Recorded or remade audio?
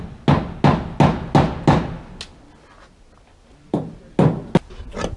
recorded